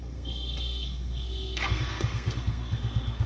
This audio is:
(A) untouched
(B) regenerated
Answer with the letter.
B